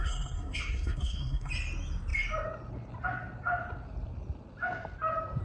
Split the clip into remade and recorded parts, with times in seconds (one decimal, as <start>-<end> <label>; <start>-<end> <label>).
0.0-1.5 remade; 1.5-5.4 recorded